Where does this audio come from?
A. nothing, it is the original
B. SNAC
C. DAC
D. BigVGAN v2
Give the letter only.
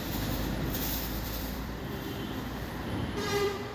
D